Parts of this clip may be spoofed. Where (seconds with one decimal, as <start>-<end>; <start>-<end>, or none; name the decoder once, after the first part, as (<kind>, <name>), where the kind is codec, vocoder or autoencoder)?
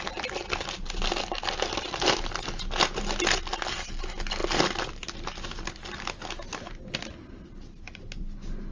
none